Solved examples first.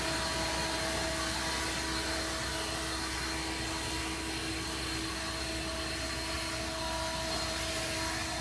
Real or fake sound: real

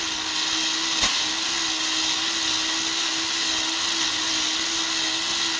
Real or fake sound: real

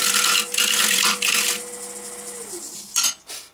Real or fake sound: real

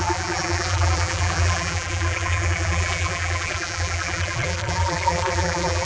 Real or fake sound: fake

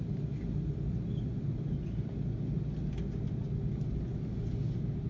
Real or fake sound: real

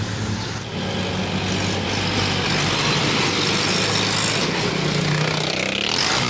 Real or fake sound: real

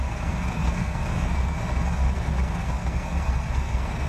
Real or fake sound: fake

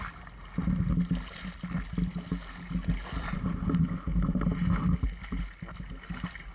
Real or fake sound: real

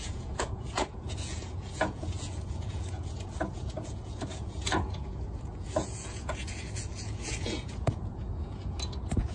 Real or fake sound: fake